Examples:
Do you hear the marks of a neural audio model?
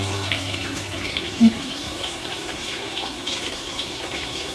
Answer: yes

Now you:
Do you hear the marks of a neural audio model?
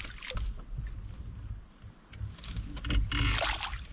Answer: no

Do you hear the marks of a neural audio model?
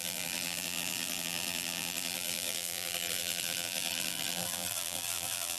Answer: yes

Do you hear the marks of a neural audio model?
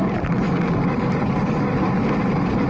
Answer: no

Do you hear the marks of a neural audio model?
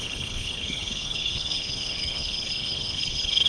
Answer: yes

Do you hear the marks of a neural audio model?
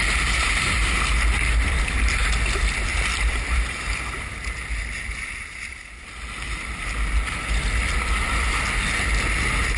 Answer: no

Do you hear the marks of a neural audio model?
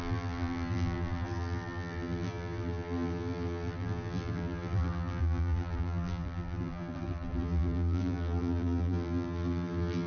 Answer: yes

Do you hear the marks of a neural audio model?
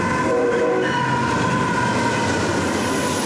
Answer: no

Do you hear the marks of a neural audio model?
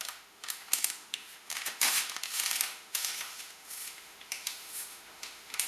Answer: yes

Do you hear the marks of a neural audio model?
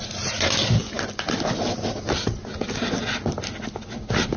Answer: no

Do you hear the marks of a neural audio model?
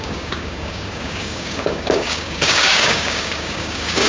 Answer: yes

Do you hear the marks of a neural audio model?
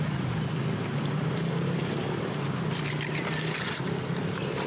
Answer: no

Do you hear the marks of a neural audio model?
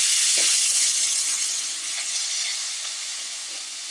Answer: yes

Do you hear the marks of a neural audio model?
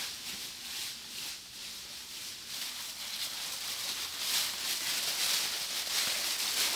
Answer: no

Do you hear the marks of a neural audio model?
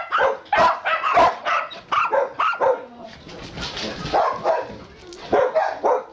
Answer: no